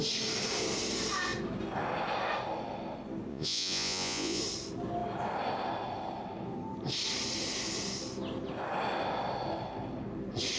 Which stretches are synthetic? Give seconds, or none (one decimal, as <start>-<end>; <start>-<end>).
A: 3.3-4.4